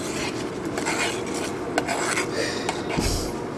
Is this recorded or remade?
recorded